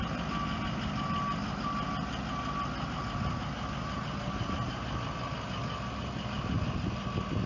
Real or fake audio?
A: real